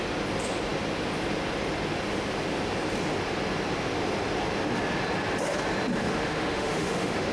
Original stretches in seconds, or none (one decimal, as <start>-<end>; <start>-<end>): 0.0-6.0